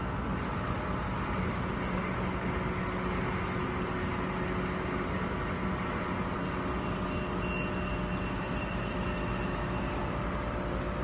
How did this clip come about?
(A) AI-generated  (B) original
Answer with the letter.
B